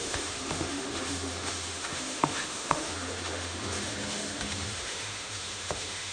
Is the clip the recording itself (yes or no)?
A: no